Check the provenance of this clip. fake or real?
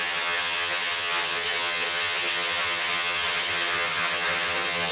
fake